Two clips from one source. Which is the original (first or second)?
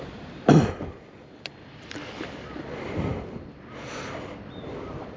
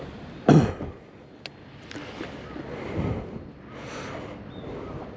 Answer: second